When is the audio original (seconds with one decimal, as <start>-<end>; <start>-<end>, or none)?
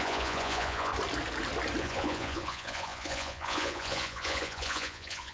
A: 0.9-1.8